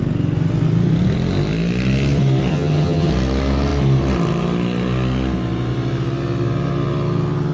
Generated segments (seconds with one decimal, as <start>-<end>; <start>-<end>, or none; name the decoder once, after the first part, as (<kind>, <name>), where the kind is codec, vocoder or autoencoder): 2.5-3.1 (vocoder, HiFi-GAN)